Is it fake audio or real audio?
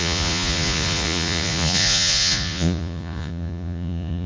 fake